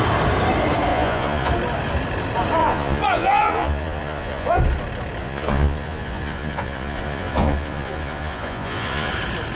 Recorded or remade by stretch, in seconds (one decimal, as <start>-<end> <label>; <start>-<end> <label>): 0.0-0.9 recorded; 0.9-1.5 remade; 1.5-2.6 recorded; 2.6-4.6 remade; 4.6-5.2 recorded; 5.2-9.1 remade; 9.1-9.6 recorded